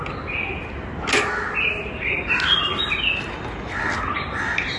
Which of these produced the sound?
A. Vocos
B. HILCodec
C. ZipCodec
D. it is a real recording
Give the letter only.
D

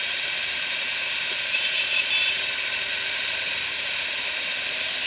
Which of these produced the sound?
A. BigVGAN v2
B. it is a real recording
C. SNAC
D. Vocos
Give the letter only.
A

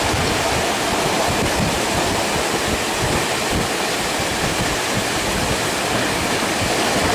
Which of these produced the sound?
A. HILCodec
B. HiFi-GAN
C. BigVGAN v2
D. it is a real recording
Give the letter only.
D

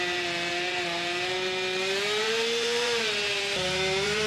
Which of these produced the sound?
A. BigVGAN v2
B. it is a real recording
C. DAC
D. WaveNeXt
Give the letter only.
A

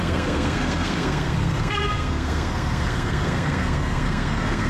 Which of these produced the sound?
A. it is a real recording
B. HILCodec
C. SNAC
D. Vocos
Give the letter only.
C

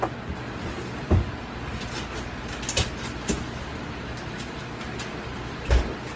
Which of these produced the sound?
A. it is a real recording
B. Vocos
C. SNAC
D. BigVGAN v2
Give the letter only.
A